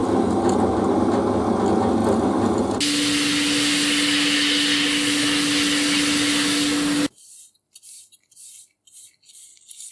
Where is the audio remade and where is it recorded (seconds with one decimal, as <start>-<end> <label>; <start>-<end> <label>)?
0.0-9.9 recorded